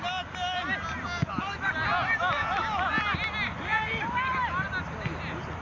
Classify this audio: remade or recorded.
recorded